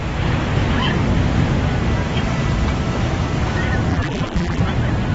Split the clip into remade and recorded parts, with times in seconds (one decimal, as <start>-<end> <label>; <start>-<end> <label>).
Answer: 0.0-3.9 recorded; 3.9-4.6 remade; 4.6-5.1 recorded

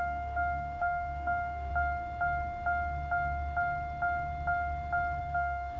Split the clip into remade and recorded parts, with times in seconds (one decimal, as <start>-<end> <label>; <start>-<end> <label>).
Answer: 0.0-1.7 remade; 1.7-5.2 recorded; 5.2-5.8 remade